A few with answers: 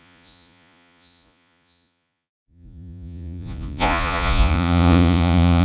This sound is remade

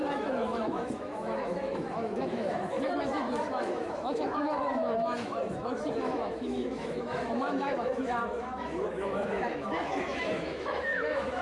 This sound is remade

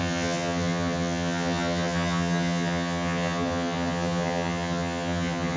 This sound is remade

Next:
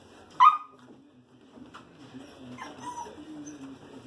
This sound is recorded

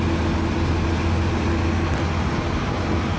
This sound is recorded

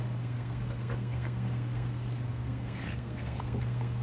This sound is remade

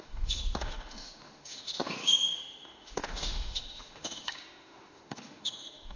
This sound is remade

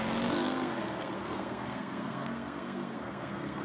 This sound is remade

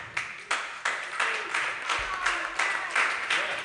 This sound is recorded